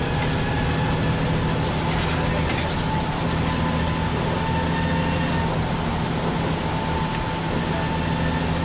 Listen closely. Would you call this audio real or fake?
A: real